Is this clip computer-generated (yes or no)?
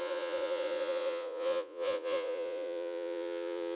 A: yes